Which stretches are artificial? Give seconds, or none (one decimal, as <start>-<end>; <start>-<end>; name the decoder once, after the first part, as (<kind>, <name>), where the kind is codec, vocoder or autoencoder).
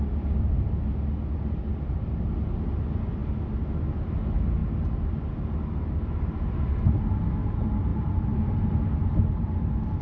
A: none